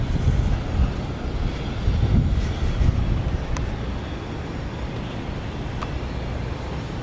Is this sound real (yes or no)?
yes